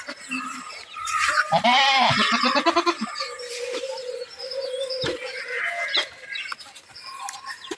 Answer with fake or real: fake